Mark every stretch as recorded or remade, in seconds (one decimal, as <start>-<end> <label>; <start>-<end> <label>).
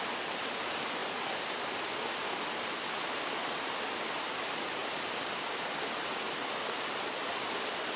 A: 0.0-8.0 recorded